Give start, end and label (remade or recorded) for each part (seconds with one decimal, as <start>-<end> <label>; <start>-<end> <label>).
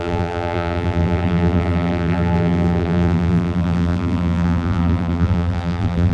0.0-6.1 remade